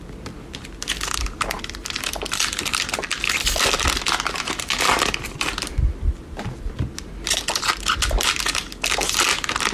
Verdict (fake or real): real